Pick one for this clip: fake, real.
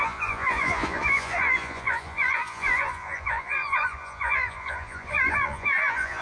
fake